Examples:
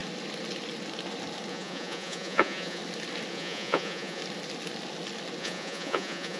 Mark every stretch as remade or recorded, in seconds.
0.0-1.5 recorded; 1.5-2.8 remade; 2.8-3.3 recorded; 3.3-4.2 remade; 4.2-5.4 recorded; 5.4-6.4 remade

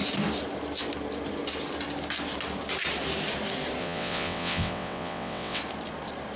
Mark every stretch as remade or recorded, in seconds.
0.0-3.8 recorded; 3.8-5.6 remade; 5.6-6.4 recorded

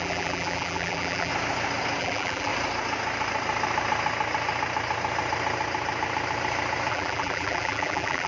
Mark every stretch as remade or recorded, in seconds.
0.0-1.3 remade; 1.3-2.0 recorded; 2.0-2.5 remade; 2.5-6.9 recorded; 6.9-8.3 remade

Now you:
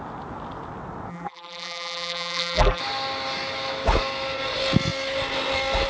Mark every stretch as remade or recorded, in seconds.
0.0-1.1 recorded; 1.1-2.8 remade; 2.8-5.9 recorded

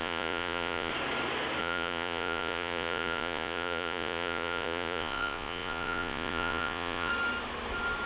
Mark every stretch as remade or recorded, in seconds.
0.0-0.9 remade; 0.9-1.6 recorded; 1.6-7.1 remade; 7.1-8.1 recorded